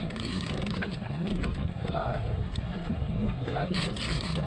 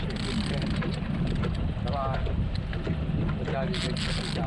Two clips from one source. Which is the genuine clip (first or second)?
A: second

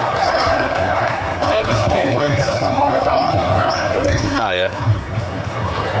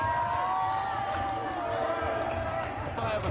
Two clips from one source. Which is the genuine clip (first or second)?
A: second